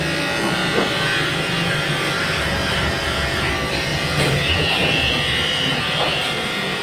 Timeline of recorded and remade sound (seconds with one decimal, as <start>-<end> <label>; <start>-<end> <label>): 0.0-0.6 recorded; 0.6-3.5 remade; 3.5-3.9 recorded; 3.9-6.8 remade